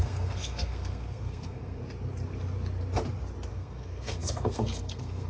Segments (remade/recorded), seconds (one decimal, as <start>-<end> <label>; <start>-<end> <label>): 0.0-1.8 remade; 1.8-3.5 recorded; 3.5-5.3 remade

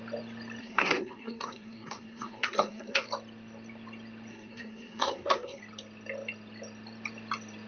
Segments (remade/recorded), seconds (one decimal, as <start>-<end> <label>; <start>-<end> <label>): 0.0-0.6 recorded; 0.6-3.1 remade; 3.1-4.3 recorded; 4.3-5.6 remade; 5.6-7.7 recorded

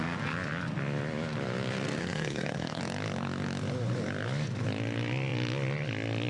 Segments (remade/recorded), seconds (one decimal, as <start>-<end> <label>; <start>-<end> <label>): 0.0-2.0 recorded; 2.0-2.8 remade; 2.8-6.3 recorded

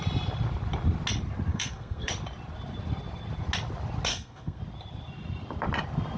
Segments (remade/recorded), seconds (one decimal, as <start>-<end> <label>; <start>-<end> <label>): 0.0-1.5 recorded; 1.5-2.1 remade; 2.1-4.1 recorded; 4.1-4.6 remade; 4.6-6.2 recorded

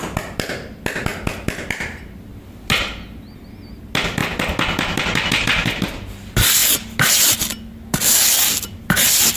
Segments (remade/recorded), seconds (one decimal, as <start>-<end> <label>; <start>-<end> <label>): 0.0-9.4 recorded

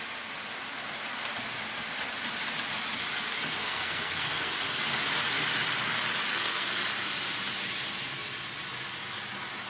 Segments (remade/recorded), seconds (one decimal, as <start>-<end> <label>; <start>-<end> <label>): 0.0-3.6 recorded; 3.6-4.5 remade; 4.5-6.3 recorded; 6.3-6.8 remade; 6.8-9.7 recorded

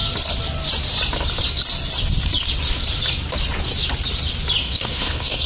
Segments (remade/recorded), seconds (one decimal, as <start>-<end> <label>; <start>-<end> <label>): 0.0-4.6 recorded; 4.6-5.5 remade